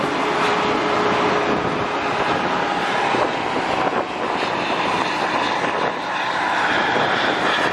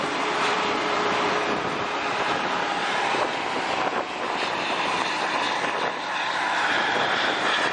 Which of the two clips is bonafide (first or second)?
first